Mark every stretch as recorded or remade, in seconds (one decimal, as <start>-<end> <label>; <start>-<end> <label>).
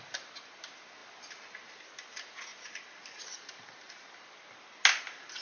0.0-5.4 recorded